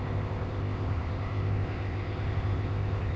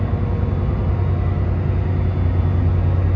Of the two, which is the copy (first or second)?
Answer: first